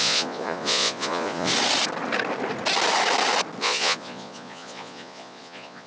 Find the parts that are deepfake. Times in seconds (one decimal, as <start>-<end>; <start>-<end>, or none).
0.0-1.5; 3.6-5.9